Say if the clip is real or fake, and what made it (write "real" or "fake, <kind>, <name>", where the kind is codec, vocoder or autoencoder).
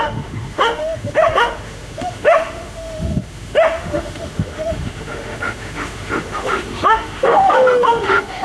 fake, autoencoder, DAC-VAE